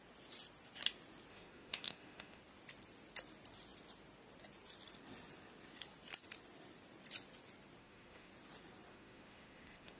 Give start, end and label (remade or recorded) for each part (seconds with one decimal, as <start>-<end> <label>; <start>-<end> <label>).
0.0-1.3 recorded; 1.3-2.4 remade; 2.4-7.8 recorded; 7.8-8.3 remade; 8.3-8.9 recorded; 8.9-10.0 remade